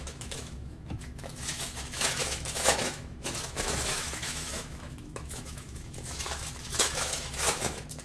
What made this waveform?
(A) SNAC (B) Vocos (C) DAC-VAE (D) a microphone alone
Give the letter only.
C